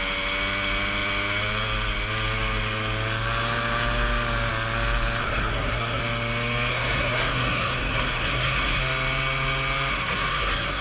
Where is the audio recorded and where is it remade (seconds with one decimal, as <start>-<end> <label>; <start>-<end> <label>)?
0.0-5.2 recorded; 5.2-6.0 remade; 6.0-6.7 recorded; 6.7-8.8 remade; 8.8-9.9 recorded; 9.9-10.8 remade